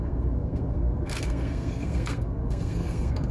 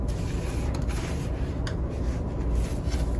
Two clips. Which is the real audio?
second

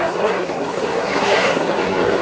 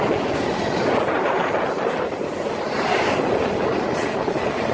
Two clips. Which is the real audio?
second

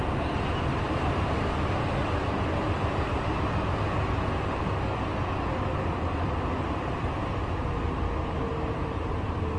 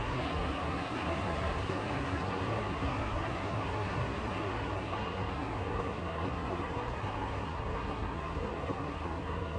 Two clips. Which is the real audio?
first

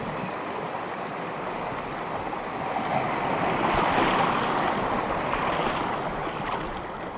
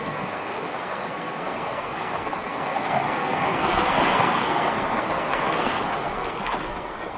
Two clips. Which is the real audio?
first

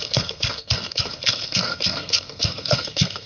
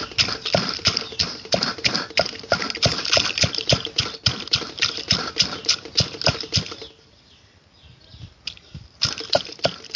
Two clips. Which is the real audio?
second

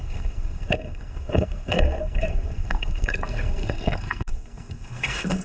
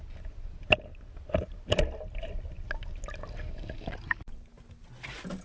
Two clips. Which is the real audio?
second